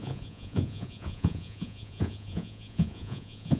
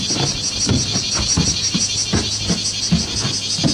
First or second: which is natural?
second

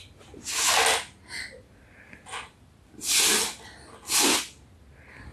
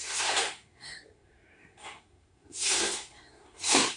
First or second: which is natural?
first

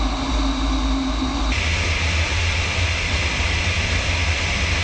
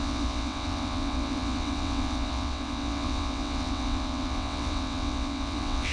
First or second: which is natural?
first